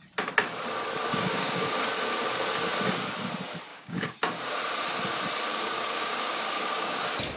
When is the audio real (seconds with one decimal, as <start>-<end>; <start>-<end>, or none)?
0.0-1.1; 1.7-3.7; 4.2-5.5; 7.0-7.4